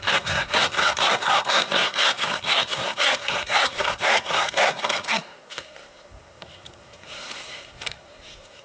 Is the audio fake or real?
fake